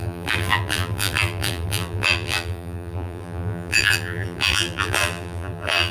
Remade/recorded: remade